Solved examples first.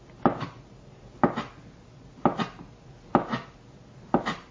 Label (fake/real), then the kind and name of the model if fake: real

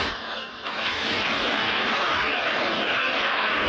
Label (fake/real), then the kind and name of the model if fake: fake, codec, DAC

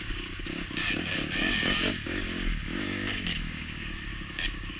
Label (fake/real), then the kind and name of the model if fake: fake, codec, DAC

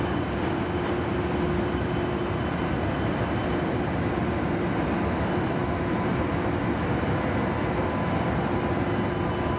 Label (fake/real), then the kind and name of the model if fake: real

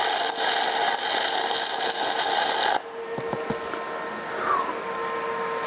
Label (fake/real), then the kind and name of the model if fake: real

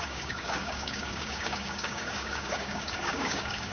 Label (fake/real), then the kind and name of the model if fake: fake, codec, DAC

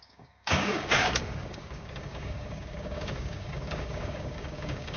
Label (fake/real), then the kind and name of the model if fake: fake, codec, DAC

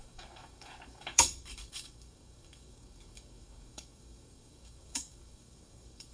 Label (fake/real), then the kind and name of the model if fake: fake, codec, DAC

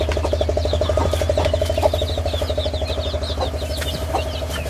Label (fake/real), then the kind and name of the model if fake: real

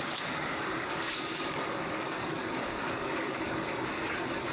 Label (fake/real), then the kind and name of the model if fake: fake, codec, DAC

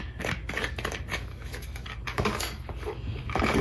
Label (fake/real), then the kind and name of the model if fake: fake, codec, DAC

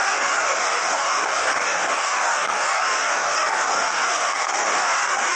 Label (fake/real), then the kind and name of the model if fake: fake, codec, DAC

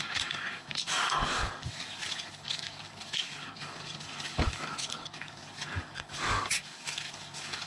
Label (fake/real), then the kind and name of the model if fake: fake, codec, DAC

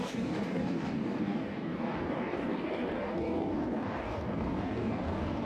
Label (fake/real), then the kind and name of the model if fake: fake, codec, DAC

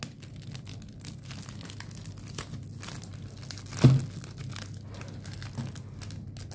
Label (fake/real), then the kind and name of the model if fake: real